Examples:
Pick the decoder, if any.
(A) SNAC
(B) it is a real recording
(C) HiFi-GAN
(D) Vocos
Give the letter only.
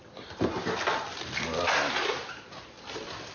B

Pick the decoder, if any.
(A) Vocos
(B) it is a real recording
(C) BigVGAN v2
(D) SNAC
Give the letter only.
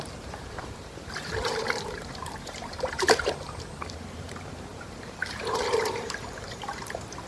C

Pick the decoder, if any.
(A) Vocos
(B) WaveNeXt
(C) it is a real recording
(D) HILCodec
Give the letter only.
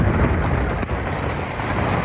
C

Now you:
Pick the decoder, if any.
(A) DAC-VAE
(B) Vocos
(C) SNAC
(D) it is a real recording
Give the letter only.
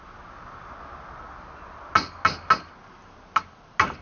D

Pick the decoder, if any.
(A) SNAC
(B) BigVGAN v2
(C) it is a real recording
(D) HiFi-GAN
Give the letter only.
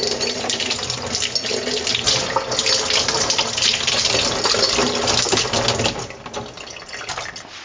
C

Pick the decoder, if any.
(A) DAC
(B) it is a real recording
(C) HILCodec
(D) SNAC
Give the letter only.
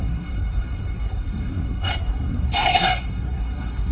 D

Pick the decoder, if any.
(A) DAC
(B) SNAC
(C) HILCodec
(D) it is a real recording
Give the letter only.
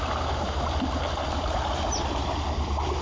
D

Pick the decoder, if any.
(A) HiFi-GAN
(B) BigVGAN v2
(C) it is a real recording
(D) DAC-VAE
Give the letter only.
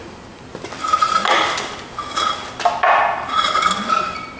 C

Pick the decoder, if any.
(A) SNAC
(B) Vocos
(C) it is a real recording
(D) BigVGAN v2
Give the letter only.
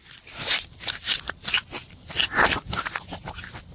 C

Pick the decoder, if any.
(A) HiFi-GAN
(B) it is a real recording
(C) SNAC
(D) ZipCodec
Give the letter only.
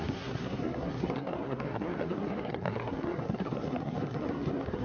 C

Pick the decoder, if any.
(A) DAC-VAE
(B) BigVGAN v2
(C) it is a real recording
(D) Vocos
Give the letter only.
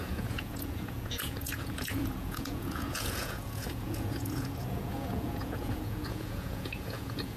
D